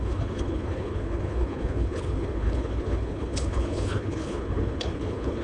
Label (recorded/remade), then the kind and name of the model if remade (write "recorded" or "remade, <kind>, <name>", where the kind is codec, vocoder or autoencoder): remade, codec, HILCodec